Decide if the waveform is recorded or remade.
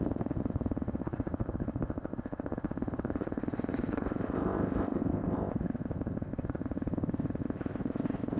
remade